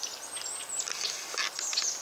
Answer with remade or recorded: recorded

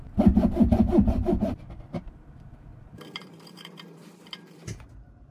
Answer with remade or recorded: remade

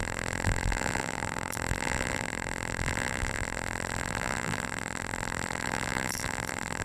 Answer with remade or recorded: remade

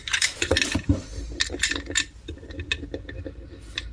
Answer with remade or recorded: recorded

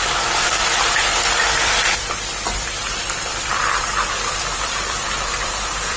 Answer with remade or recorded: remade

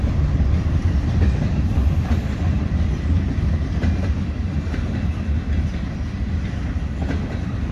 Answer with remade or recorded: recorded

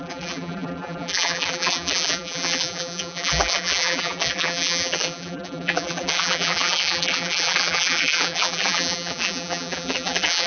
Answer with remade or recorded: remade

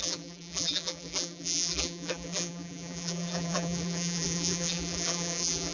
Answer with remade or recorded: remade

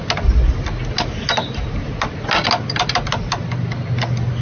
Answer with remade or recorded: recorded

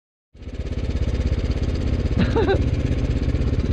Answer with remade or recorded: recorded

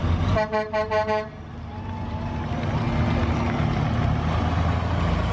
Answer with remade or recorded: recorded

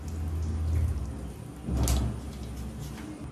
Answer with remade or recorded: recorded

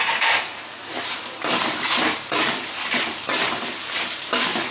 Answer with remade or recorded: remade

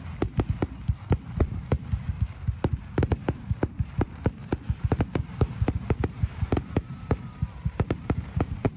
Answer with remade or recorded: remade